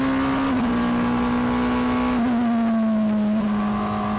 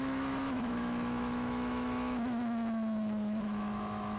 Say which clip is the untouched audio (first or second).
first